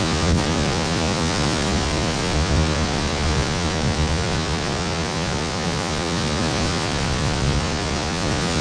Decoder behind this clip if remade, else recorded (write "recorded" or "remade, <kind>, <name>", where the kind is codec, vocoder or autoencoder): remade, vocoder, Vocos